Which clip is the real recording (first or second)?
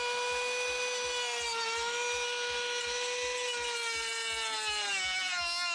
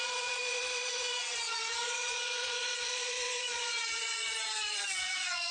first